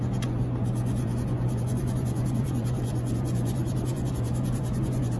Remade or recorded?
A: remade